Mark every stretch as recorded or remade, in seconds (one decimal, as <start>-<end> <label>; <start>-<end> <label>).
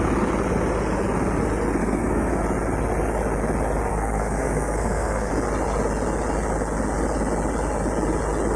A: 0.0-1.8 recorded; 1.8-2.3 remade; 2.3-3.9 recorded; 3.9-5.3 remade; 5.3-8.6 recorded